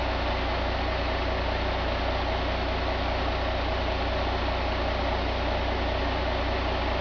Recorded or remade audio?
recorded